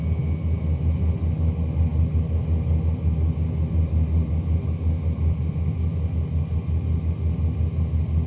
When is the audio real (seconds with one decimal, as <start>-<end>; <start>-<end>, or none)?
0.0-8.3